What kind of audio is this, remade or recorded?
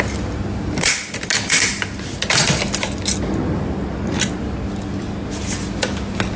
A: recorded